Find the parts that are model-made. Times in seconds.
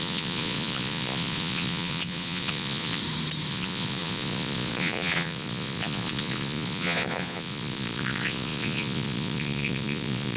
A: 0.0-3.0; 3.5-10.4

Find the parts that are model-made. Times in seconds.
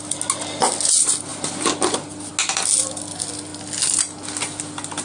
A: none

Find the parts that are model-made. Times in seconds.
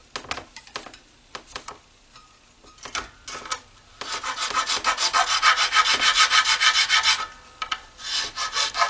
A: none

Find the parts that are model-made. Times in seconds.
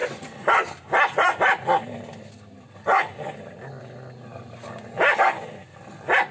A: none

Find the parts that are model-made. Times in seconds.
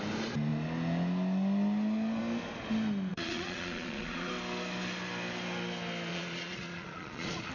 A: 3.1-4.3; 6.1-7.5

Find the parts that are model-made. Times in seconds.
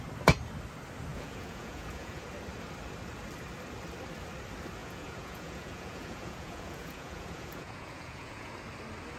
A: 1.1-2.2; 4.8-8.5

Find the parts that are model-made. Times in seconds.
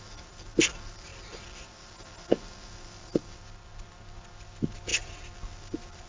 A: none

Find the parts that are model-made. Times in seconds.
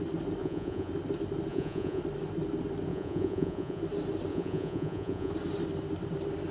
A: 0.4-0.9; 1.5-2.0; 2.9-3.8; 4.3-5.3